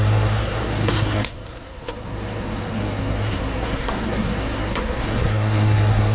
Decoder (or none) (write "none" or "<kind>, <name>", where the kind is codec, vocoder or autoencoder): codec, SNAC